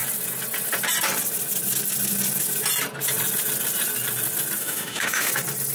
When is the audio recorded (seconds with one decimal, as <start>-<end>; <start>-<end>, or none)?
0.0-4.6; 5.3-5.7